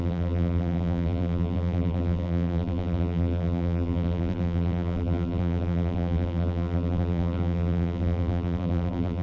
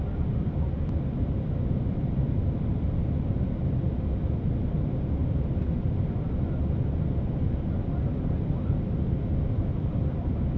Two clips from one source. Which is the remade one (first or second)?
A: first